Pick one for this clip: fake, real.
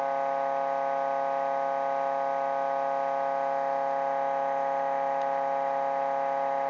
real